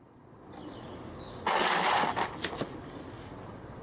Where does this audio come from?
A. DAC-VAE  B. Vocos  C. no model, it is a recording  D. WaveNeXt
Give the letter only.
C